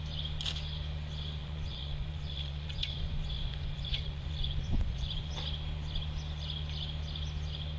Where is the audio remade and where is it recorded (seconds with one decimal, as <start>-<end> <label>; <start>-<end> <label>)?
0.0-1.4 recorded; 1.4-5.3 remade; 5.3-7.8 recorded